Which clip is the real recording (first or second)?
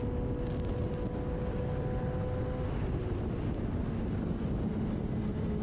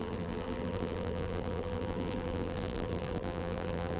first